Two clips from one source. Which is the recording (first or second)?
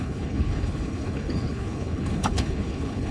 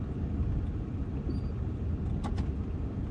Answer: second